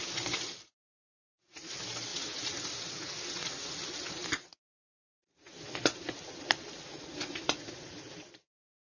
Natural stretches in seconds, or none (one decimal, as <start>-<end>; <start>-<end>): 0.7-4.6